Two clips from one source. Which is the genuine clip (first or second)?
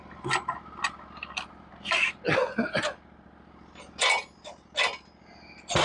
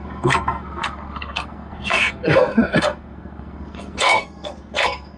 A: first